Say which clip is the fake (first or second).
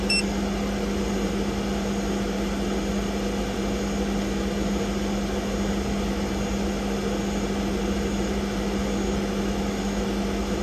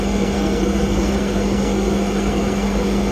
second